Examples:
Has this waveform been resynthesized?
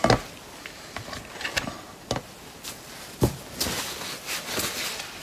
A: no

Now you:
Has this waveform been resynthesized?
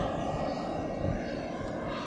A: no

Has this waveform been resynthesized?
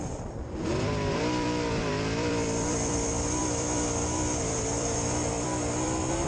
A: yes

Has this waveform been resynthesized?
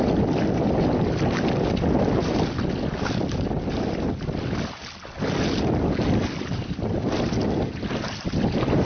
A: no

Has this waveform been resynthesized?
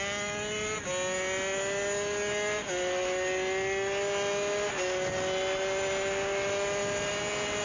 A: no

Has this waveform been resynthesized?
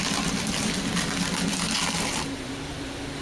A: no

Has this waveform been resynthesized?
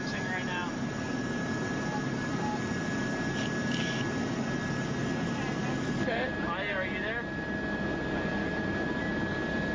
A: no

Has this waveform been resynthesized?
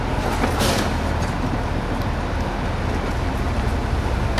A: no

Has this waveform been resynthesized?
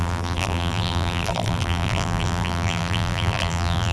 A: yes